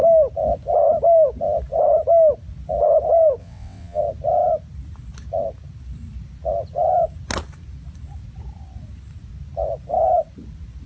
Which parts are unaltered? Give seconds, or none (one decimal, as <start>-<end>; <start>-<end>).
0.0-3.4; 4.0-10.9